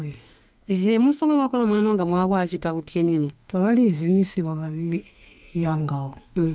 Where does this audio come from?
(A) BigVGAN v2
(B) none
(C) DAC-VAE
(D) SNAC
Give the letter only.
D